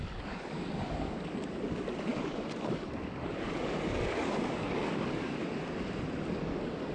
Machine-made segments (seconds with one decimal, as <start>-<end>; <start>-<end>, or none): 0.0-5.4; 6.3-6.9